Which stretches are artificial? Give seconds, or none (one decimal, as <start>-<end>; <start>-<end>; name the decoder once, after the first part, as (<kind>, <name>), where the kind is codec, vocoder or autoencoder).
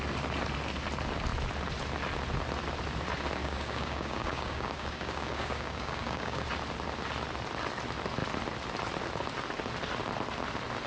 3.4-6.4 (codec, DAC)